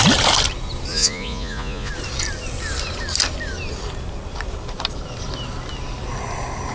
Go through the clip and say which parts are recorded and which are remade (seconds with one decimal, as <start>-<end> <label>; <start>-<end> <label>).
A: 0.0-0.9 recorded; 0.9-1.9 remade; 1.9-6.7 recorded